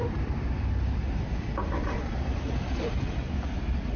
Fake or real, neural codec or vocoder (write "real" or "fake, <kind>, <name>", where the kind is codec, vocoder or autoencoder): fake, vocoder, BigVGAN v2